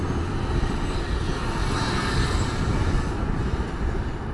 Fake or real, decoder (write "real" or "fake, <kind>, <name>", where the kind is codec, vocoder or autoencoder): real